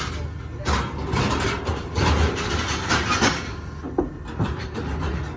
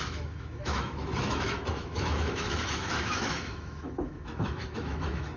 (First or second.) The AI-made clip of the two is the second